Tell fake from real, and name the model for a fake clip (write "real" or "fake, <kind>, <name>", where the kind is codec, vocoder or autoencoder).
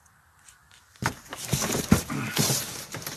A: fake, vocoder, BigVGAN v2